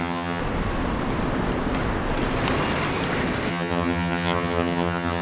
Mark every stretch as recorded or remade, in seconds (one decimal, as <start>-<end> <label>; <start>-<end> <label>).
0.0-0.4 remade; 0.4-3.5 recorded; 3.5-5.2 remade